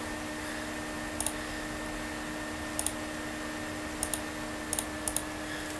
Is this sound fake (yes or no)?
no